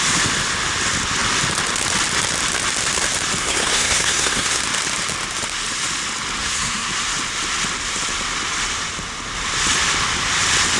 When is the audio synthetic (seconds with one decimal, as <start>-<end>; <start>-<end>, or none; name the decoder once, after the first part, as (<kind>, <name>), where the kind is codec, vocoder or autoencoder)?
3.4-4.6 (codec, SNAC); 6.4-6.9